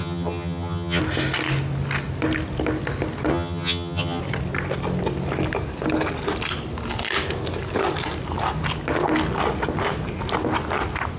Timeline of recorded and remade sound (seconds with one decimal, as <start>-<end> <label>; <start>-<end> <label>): 0.0-1.0 remade; 1.0-3.3 recorded; 3.3-4.2 remade; 4.2-11.2 recorded